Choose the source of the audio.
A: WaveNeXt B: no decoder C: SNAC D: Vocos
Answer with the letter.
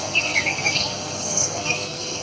C